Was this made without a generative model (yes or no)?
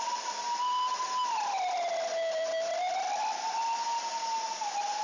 yes